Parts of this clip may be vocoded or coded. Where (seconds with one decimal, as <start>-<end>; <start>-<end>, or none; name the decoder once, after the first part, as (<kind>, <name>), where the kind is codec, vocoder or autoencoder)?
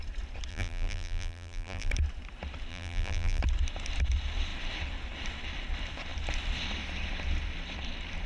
0.5-1.9 (vocoder, BigVGAN v2); 2.7-3.4